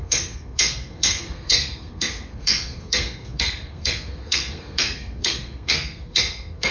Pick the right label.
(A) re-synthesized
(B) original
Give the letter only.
A